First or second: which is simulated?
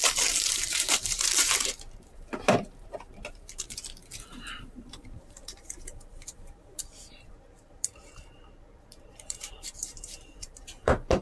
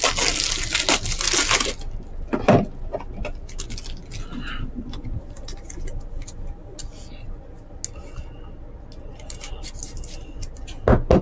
first